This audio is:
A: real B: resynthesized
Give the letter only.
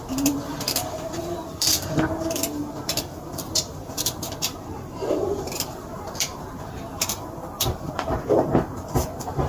B